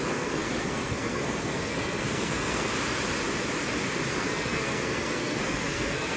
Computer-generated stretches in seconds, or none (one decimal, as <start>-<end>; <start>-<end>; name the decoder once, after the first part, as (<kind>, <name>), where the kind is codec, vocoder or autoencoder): 0.0-2.7 (codec, SNAC); 4.1-6.2